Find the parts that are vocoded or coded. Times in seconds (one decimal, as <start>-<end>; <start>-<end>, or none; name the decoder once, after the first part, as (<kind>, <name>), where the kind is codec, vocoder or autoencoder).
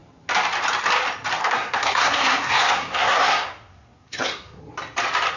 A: 1.4-4.6 (codec, SNAC)